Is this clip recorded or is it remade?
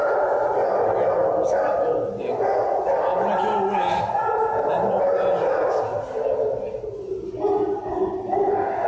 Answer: recorded